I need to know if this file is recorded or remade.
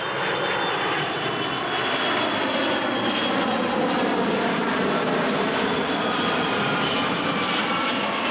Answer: recorded